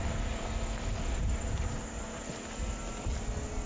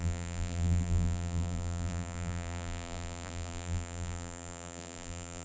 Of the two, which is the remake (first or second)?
second